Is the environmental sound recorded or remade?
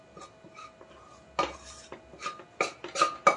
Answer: recorded